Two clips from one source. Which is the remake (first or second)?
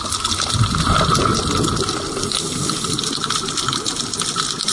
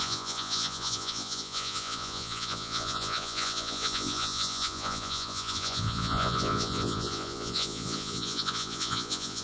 second